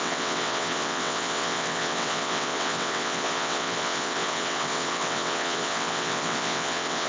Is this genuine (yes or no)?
no